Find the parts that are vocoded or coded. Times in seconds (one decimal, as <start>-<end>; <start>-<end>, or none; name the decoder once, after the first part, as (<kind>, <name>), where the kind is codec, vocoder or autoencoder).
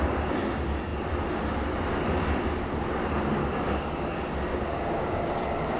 4.5-5.3 (codec, DAC)